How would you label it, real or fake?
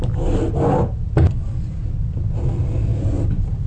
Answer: real